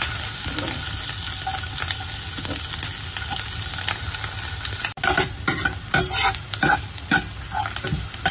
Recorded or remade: recorded